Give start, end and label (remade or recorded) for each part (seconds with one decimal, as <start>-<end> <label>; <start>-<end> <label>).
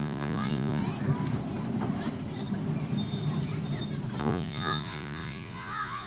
0.0-0.8 remade; 0.8-4.2 recorded; 4.2-6.1 remade